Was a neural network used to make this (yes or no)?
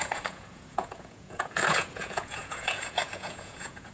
yes